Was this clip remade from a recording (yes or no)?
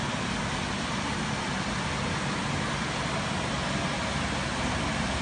no